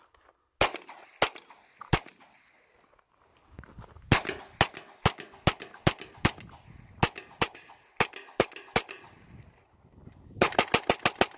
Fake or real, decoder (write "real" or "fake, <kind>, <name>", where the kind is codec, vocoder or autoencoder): real